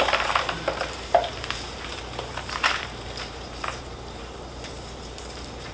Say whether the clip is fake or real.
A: fake